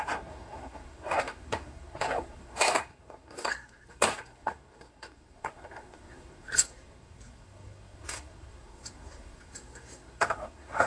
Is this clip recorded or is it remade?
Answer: remade